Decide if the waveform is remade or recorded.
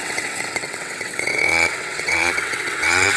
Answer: remade